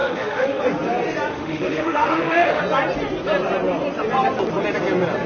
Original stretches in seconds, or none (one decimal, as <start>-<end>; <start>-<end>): 0.6-1.3; 2.6-5.3